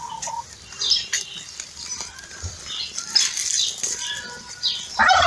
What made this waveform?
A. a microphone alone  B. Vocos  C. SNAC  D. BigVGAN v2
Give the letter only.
A